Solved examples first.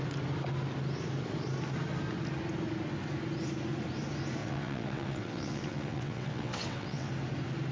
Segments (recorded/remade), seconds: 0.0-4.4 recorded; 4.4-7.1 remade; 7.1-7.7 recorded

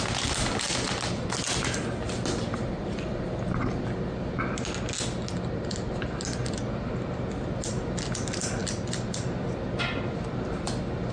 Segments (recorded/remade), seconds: 0.0-11.1 recorded

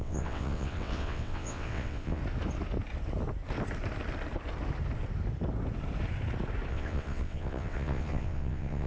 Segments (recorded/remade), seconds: 0.0-2.2 remade; 2.2-6.7 recorded; 6.7-8.9 remade

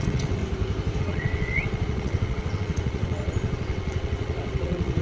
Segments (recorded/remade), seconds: 0.0-0.4 remade; 0.4-1.0 recorded; 1.0-5.0 remade

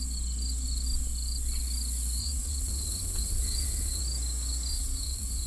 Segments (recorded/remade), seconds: 0.0-2.2 recorded; 2.2-4.0 remade; 4.0-4.7 recorded; 4.7-5.5 remade

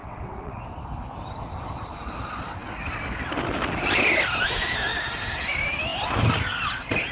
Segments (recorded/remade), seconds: 0.0-0.6 remade; 0.6-7.1 recorded

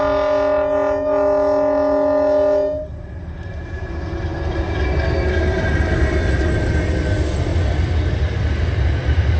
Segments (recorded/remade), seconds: 0.0-9.4 recorded

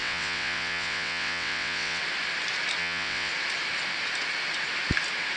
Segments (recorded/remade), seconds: 0.0-2.0 remade; 2.0-2.8 recorded; 2.8-3.3 remade; 3.3-5.4 recorded